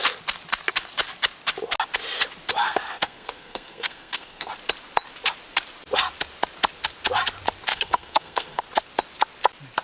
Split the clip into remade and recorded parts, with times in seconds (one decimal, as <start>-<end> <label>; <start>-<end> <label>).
0.0-2.6 recorded; 2.6-4.5 remade; 4.5-7.7 recorded; 7.7-8.6 remade; 8.6-9.8 recorded